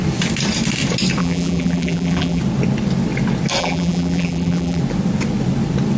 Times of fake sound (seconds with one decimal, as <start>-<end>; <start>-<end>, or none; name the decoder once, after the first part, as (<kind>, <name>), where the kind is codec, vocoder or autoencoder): 1.2-2.4 (vocoder, BigVGAN v2); 3.6-4.8

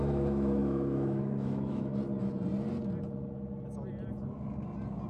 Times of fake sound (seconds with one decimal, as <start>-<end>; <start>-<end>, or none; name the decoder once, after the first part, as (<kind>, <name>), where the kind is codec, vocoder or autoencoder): 0.0-1.9 (autoencoder, DAC-VAE)

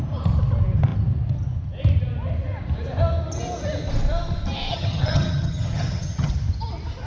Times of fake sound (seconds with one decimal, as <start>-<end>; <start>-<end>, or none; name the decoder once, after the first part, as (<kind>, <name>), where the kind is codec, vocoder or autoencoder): 4.7-6.3 (vocoder, HiFi-GAN)

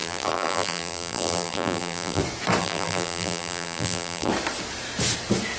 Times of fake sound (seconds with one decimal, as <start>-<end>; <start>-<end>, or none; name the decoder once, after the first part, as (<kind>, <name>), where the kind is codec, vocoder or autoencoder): 0.0-2.2 (vocoder, BigVGAN v2); 2.6-4.3

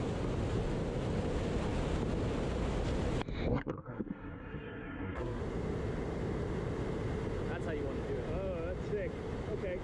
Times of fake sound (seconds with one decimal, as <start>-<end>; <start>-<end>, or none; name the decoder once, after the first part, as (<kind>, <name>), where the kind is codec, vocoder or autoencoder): 3.5-5.4 (codec, SNAC)

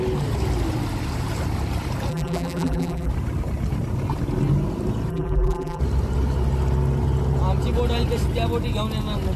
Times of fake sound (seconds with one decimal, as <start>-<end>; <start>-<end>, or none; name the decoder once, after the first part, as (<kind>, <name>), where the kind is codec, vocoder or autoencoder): 2.1-3.1 (vocoder, BigVGAN v2); 5.1-5.8